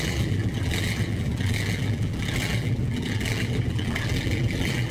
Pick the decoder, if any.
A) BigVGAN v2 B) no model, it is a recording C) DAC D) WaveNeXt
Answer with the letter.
A